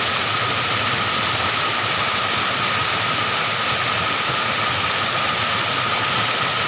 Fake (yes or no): no